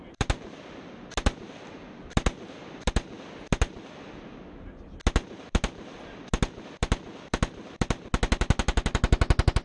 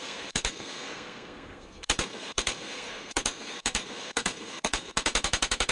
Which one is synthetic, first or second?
second